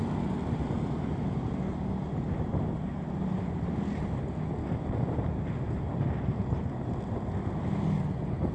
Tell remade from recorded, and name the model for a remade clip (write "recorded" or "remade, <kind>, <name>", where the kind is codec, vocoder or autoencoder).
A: recorded